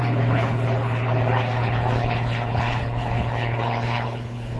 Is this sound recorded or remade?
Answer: remade